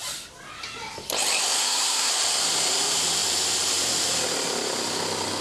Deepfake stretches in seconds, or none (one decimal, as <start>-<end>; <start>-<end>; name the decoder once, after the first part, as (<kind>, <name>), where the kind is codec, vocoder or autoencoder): 1.6-2.1 (codec, SNAC)